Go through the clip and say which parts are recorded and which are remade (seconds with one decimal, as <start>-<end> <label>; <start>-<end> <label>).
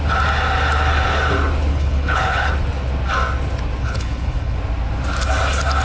0.0-1.7 recorded; 1.7-2.5 remade; 2.5-3.8 recorded; 3.8-4.6 remade; 4.6-5.8 recorded